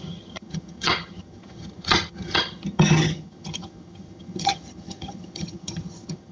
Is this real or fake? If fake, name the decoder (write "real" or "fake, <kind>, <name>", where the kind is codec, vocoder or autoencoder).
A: fake, vocoder, HiFi-GAN